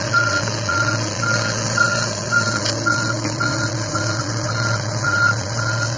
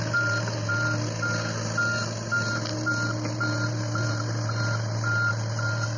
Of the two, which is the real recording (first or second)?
second